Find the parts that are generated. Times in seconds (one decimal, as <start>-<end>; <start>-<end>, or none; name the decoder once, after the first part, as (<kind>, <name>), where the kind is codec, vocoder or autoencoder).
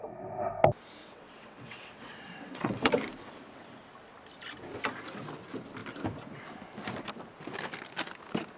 1.0-2.9 (vocoder, WaveNeXt)